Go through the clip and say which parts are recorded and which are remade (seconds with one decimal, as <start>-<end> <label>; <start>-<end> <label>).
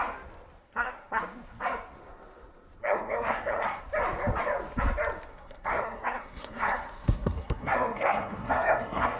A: 0.0-0.6 recorded; 0.6-1.2 remade; 1.2-2.8 recorded; 2.8-3.8 remade; 3.8-5.3 recorded; 5.3-9.2 remade